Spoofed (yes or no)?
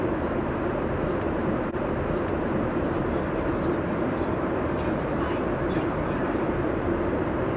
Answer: yes